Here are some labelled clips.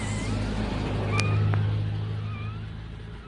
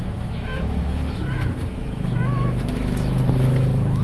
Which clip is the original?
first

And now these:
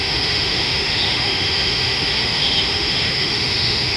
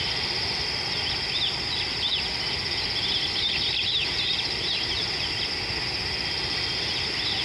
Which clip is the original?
second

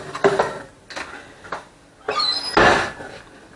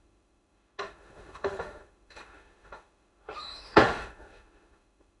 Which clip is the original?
first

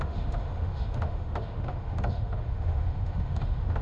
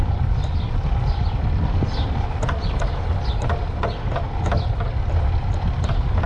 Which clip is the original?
second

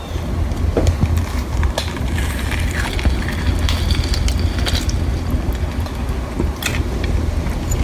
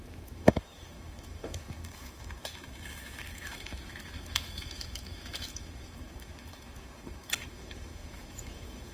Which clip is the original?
first